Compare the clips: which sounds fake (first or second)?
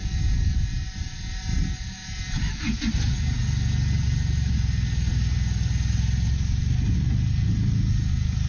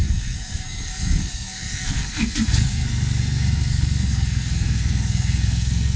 second